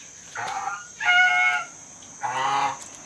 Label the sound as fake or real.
real